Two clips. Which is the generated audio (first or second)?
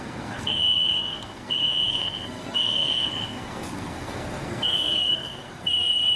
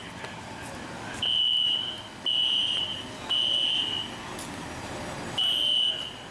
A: first